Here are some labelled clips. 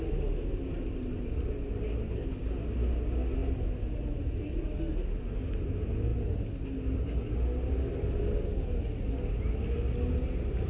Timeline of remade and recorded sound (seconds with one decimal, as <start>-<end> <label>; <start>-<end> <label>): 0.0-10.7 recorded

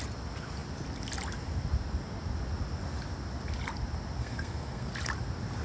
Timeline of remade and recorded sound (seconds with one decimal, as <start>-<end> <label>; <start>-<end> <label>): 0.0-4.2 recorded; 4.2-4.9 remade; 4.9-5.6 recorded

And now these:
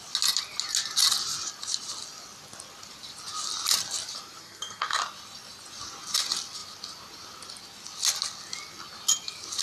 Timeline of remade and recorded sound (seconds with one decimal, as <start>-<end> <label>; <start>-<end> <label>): 0.0-4.4 recorded; 4.4-5.0 remade; 5.0-9.6 recorded

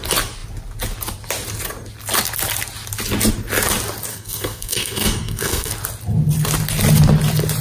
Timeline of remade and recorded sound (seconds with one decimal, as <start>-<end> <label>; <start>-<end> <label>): 0.0-4.1 recorded; 4.1-5.7 remade; 5.7-7.6 recorded

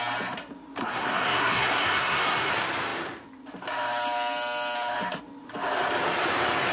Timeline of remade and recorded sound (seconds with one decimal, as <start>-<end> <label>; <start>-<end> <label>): 0.0-0.8 recorded; 0.8-2.5 remade; 2.5-6.7 recorded